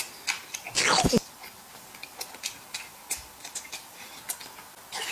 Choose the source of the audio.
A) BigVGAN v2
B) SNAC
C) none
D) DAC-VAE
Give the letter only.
C